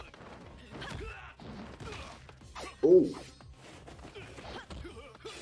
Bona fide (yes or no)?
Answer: yes